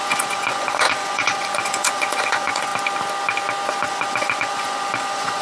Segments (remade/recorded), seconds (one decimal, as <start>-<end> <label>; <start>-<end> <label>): 0.0-2.7 remade; 2.7-3.8 recorded; 3.8-5.4 remade